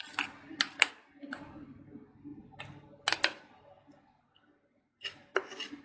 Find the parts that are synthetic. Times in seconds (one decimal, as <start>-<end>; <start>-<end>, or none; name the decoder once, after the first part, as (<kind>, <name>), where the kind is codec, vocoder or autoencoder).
none